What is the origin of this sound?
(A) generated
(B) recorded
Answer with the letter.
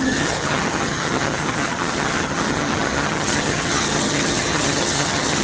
A